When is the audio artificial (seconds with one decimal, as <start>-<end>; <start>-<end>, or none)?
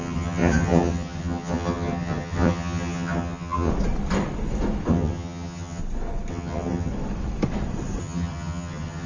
0.0-3.7; 4.9-5.8; 6.3-6.9; 8.0-9.1